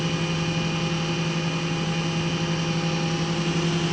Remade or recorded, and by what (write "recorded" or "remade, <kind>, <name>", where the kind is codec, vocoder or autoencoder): recorded